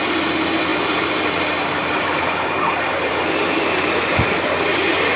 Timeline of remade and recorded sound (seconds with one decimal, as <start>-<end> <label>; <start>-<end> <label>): 0.0-0.7 recorded; 0.7-3.8 remade; 3.8-5.2 recorded